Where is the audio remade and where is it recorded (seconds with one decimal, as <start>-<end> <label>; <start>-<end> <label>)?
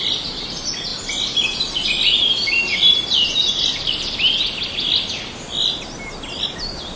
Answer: 0.0-7.0 recorded